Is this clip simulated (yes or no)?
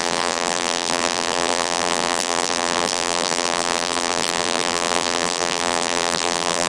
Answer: yes